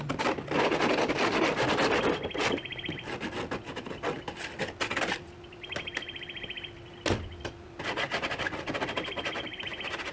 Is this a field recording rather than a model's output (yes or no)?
yes